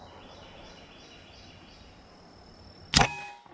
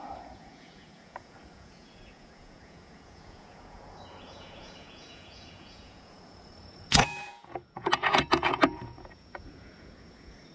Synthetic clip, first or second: second